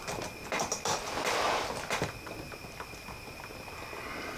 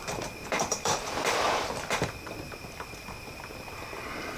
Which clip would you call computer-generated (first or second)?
second